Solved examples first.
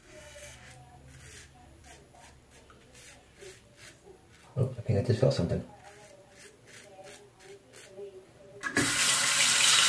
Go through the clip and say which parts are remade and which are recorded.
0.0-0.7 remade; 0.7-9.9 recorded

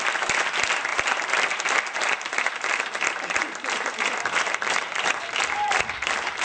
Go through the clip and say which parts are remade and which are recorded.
0.0-6.4 remade

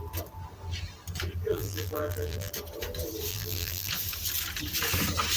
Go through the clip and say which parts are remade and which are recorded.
0.0-1.5 recorded; 1.5-2.5 remade; 2.5-3.3 recorded; 3.3-3.9 remade; 3.9-5.4 recorded

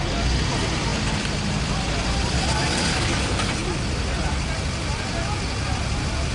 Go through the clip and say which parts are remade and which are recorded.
0.0-6.3 recorded

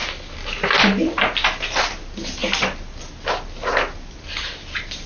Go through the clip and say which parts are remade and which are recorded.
0.0-5.1 recorded

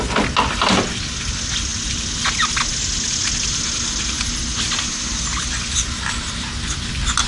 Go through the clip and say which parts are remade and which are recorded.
0.0-7.3 recorded